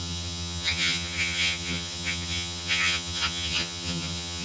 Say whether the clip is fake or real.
fake